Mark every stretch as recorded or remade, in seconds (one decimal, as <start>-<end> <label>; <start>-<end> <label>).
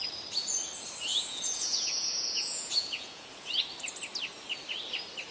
0.0-1.1 recorded; 1.1-3.6 remade; 3.6-5.3 recorded